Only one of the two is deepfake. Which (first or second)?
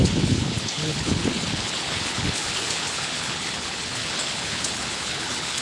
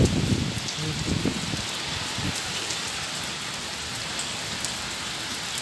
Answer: first